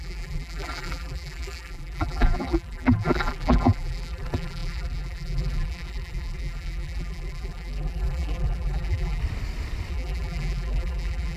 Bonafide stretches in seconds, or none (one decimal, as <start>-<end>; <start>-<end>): 9.2-9.9